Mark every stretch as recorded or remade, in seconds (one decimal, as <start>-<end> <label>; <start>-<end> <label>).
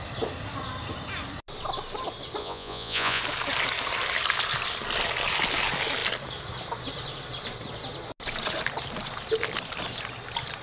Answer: 0.0-2.4 recorded; 2.4-3.2 remade; 3.2-10.6 recorded